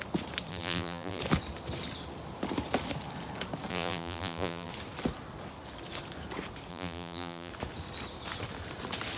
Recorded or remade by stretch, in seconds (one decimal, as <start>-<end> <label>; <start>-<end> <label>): 0.0-0.5 recorded; 0.5-1.2 remade; 1.2-3.7 recorded; 3.7-4.7 remade; 4.7-6.7 recorded; 6.7-7.5 remade; 7.5-9.2 recorded